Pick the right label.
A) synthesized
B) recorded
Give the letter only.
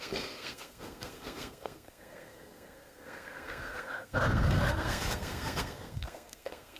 A